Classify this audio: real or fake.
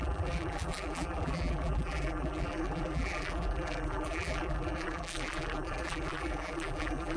fake